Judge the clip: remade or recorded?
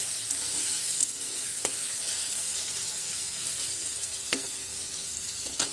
remade